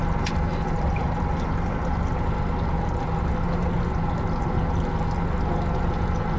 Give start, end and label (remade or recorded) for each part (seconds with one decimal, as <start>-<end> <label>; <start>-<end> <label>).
0.0-0.5 recorded; 0.5-2.1 remade; 2.1-6.4 recorded